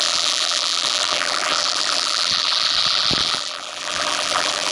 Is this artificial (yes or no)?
yes